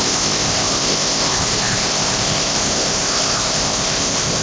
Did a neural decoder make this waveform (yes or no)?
yes